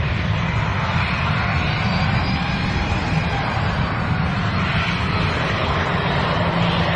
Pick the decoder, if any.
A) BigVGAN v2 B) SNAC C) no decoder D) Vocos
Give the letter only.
C